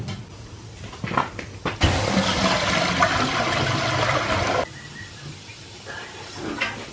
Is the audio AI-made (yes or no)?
no